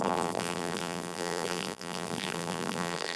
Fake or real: fake